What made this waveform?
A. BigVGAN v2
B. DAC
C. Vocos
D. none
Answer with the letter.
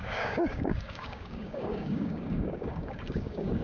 B